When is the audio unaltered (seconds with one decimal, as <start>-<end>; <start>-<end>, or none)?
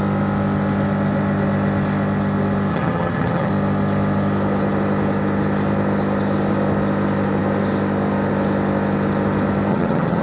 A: 0.0-2.7; 3.5-9.7